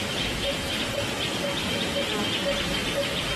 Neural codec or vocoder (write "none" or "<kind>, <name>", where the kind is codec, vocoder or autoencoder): none